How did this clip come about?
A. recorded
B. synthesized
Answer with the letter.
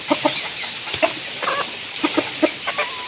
A